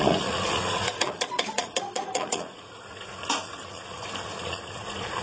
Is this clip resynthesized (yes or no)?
yes